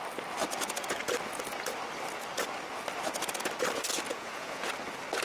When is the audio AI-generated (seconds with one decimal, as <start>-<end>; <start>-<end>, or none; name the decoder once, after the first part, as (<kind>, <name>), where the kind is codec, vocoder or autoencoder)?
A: 4.1-4.7 (vocoder, Vocos)